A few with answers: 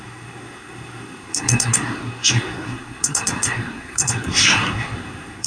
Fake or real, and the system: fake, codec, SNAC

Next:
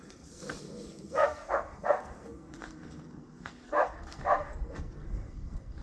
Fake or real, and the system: fake, codec, SNAC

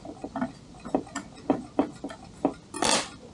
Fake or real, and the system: real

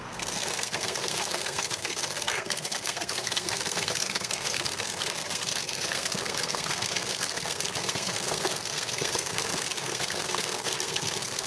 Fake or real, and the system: fake, codec, SNAC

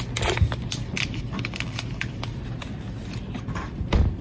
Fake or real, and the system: real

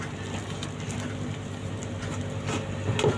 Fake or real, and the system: real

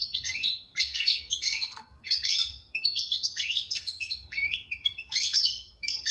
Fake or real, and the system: fake, codec, SNAC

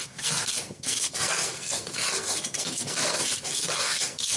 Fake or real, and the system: fake, codec, SNAC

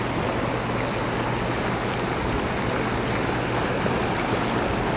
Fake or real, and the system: real